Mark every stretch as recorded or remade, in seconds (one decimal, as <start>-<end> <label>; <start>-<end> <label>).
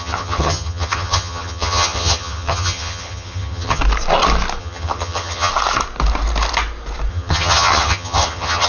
0.0-3.8 remade; 3.8-4.6 recorded; 4.6-5.5 remade; 5.5-7.1 recorded; 7.1-8.7 remade